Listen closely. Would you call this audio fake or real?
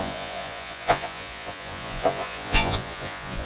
fake